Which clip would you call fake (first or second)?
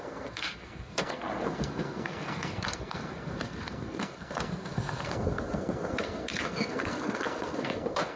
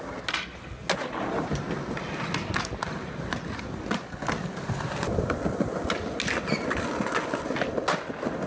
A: first